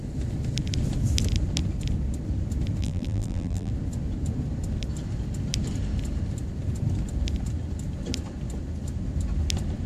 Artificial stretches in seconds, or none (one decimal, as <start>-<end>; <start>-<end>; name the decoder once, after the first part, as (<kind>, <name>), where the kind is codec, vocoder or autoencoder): 2.8-3.7 (vocoder, BigVGAN v2)